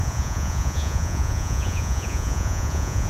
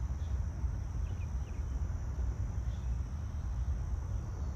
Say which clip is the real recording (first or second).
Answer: second